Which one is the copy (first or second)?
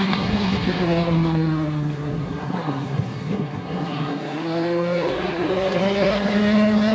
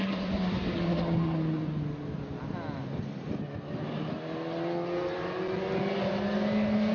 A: first